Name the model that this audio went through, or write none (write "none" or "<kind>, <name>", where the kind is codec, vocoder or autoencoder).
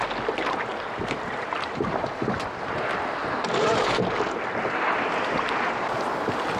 none